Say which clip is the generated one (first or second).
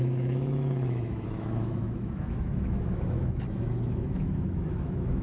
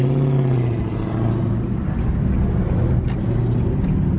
first